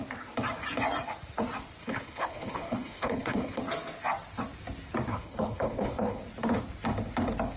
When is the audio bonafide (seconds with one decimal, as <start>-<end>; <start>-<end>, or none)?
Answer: 0.0-1.8; 3.6-5.1; 6.2-7.6